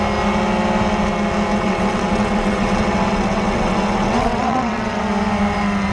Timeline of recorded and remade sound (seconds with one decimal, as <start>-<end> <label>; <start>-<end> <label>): 0.0-1.5 recorded; 1.5-5.0 remade; 5.0-5.9 recorded